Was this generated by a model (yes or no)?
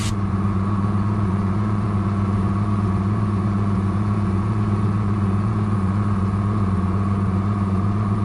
yes